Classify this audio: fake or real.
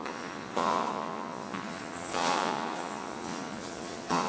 fake